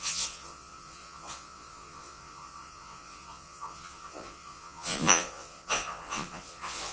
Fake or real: fake